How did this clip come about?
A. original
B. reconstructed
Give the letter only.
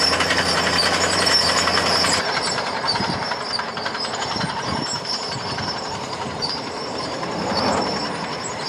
B